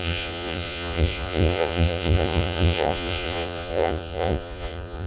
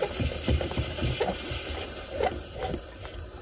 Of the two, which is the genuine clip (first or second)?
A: second